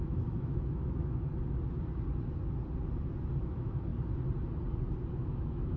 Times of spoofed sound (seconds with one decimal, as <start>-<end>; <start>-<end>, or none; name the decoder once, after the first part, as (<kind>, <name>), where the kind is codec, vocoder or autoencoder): 0.0-1.3 (autoencoder, DAC-VAE); 3.4-3.9; 5.1-5.8